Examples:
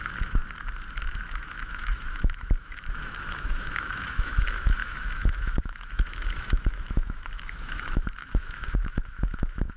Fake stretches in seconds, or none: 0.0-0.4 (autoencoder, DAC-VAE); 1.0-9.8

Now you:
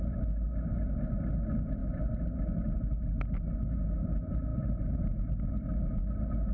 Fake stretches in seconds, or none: none

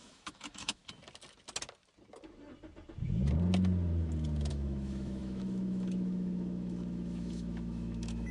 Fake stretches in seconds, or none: 0.0-0.8 (autoencoder, DAC-VAE); 4.5-8.3

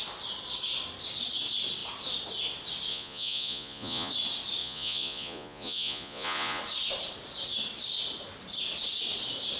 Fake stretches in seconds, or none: 2.9-4.1 (vocoder, Vocos); 4.6-6.6

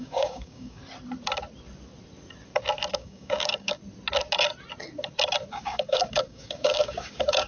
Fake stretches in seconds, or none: 0.0-0.8 (codec, DAC); 2.9-3.8; 5.5-7.5

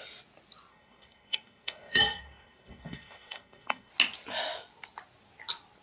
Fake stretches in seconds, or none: 0.7-3.9 (codec, SNAC)